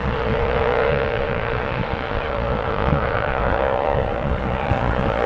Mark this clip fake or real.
fake